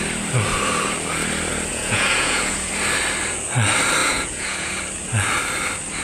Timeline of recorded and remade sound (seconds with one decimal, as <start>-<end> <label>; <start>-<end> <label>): 0.0-1.7 recorded; 1.7-2.7 remade; 2.7-4.0 recorded; 4.0-4.8 remade; 4.8-6.0 recorded